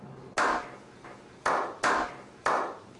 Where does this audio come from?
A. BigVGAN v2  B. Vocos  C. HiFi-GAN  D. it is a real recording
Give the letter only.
D